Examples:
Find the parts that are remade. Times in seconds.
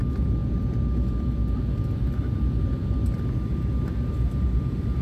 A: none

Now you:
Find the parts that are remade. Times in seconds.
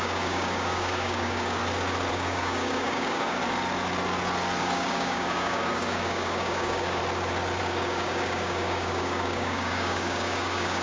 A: 0.0-1.6; 2.1-3.4; 4.6-7.0; 7.6-10.8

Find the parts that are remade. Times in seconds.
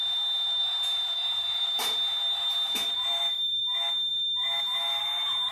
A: 0.6-3.6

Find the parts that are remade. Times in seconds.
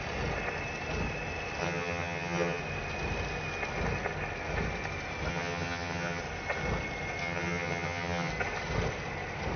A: 1.6-2.6; 5.3-6.2; 7.2-8.3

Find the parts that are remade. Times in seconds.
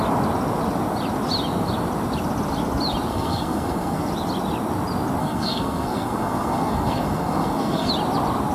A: 3.1-4.1; 5.2-7.9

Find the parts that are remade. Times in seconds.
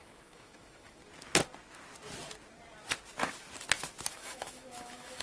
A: 0.0-1.0; 4.1-5.2